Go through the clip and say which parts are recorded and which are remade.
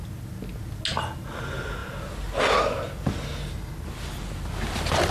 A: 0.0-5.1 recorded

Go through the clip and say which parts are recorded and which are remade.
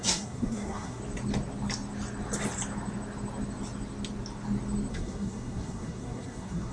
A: 0.0-1.0 remade; 1.0-4.9 recorded; 4.9-6.7 remade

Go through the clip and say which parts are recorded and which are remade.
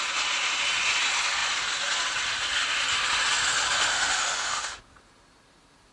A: 0.0-3.9 recorded; 3.9-4.8 remade; 4.8-5.9 recorded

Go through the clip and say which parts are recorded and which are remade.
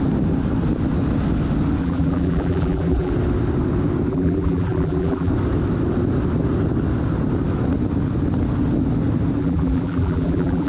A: 0.0-1.8 recorded; 1.8-3.1 remade; 3.1-4.1 recorded; 4.1-5.3 remade; 5.3-9.4 recorded; 9.4-10.7 remade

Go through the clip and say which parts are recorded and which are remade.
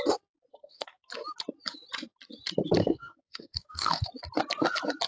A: 0.0-0.5 recorded; 0.5-1.1 remade; 1.1-2.8 recorded; 2.8-3.9 remade; 3.9-5.1 recorded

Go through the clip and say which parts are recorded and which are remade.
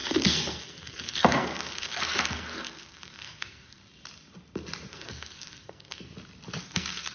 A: 0.0-3.8 remade; 3.8-4.9 recorded; 4.9-6.1 remade; 6.1-6.6 recorded; 6.6-7.1 remade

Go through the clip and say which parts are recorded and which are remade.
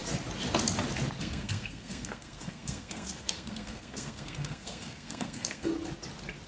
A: 0.0-1.2 recorded; 1.2-5.7 remade; 5.7-6.5 recorded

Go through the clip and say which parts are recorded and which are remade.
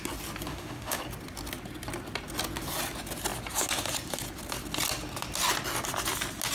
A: 0.0-0.5 recorded; 0.5-1.0 remade; 1.0-6.5 recorded